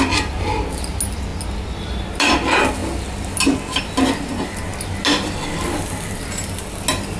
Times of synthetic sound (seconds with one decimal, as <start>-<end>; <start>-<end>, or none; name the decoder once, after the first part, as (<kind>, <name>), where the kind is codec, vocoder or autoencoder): none